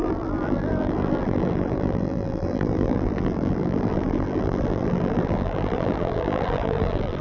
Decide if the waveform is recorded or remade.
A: remade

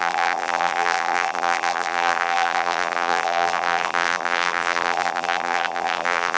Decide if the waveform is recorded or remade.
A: remade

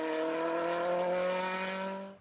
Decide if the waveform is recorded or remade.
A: recorded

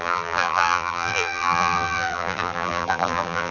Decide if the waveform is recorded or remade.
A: remade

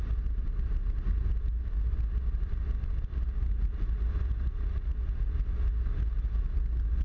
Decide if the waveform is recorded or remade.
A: recorded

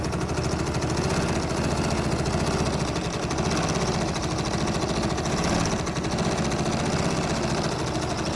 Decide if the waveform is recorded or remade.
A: recorded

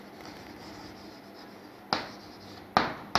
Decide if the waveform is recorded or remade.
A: recorded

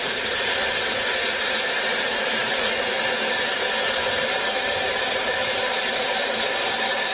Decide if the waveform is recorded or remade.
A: remade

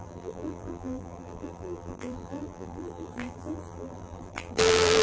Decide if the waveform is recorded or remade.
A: remade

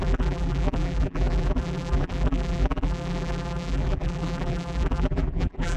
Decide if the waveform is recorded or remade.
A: remade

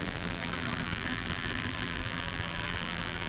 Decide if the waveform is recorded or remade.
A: remade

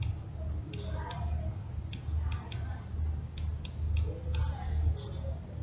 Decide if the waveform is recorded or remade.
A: recorded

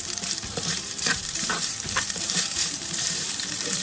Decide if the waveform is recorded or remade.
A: remade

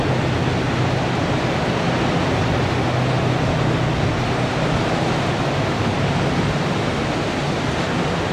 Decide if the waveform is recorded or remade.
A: recorded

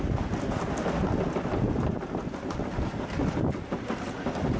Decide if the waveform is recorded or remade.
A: recorded